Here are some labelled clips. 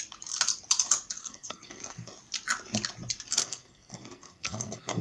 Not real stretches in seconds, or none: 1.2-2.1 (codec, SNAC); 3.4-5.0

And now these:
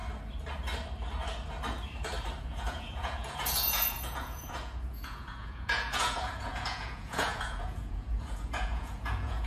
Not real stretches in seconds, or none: 2.4-9.5 (vocoder, Vocos)